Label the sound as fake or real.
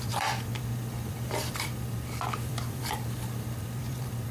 fake